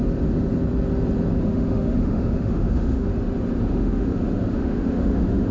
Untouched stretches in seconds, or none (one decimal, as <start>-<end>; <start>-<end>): 0.0-1.4; 3.1-3.6